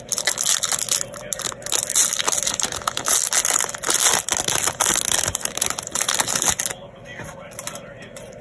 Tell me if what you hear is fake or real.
real